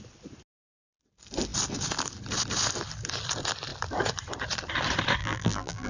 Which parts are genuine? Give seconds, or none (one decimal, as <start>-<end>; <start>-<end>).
0.0-5.2